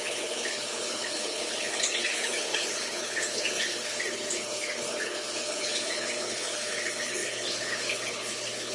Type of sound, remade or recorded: remade